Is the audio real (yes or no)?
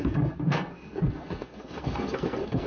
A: no